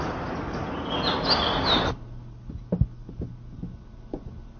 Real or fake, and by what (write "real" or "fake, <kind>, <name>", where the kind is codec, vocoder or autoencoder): real